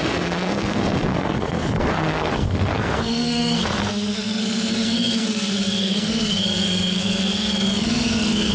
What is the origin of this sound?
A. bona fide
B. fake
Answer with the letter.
B